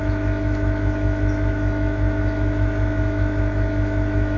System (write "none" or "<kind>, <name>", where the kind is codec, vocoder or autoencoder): autoencoder, DAC-VAE